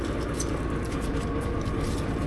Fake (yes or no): no